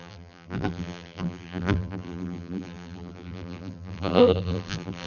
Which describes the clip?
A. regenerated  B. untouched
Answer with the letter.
A